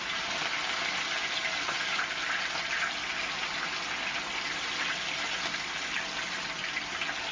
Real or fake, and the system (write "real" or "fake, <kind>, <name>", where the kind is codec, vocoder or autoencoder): real